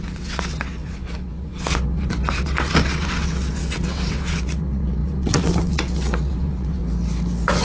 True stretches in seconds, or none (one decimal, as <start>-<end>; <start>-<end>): 6.8-7.6